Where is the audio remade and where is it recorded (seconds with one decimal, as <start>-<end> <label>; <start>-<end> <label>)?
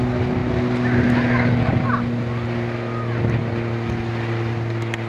0.0-5.1 recorded